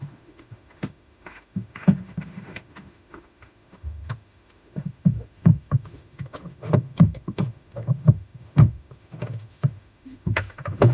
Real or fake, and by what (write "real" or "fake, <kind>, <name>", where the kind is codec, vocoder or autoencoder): fake, autoencoder, DAC-VAE